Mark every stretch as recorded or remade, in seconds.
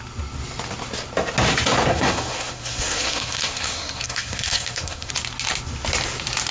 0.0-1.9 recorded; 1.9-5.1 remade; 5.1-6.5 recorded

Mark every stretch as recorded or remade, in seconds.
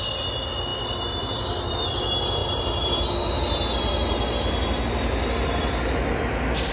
0.0-6.7 recorded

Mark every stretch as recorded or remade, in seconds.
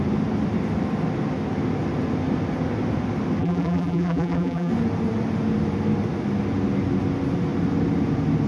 0.0-3.4 recorded; 3.4-4.7 remade; 4.7-8.5 recorded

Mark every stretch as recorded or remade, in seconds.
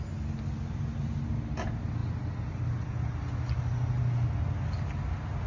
0.0-5.5 recorded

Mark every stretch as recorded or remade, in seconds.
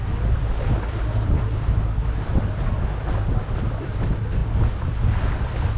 0.0-5.8 recorded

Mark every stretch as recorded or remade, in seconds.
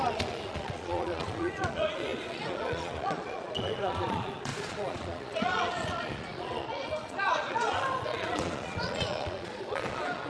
0.0-10.3 remade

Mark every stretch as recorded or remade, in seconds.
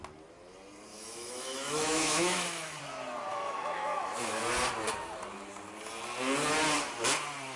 0.0-0.9 recorded; 0.9-2.8 remade; 2.8-3.3 recorded; 3.3-4.4 remade; 4.4-7.6 recorded